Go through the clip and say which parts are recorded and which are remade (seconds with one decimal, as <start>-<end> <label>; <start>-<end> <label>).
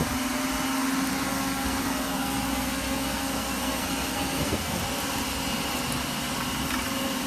0.0-1.3 recorded; 1.3-4.8 remade; 4.8-7.3 recorded